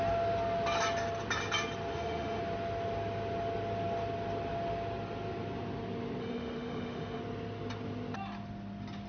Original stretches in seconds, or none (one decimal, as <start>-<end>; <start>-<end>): 0.0-1.9; 2.4-6.2; 7.2-9.1